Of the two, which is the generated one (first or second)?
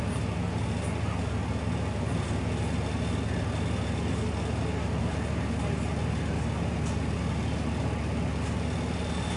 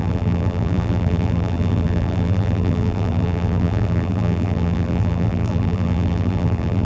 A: second